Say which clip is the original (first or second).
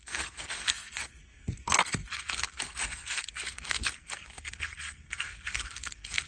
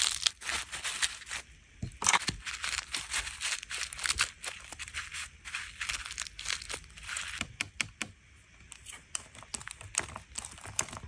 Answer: second